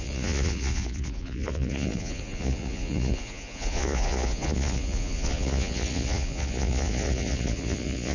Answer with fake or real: fake